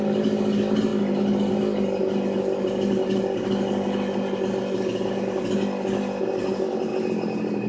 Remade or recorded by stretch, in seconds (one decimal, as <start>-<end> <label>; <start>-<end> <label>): 0.0-7.7 recorded